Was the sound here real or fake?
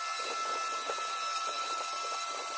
real